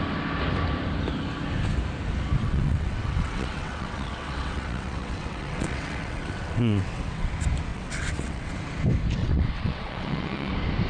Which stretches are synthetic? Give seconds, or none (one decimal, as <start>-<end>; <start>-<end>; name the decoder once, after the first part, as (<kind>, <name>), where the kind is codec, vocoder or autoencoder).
2.4-7.3 (vocoder, WaveNeXt); 7.7-8.5; 9.2-10.5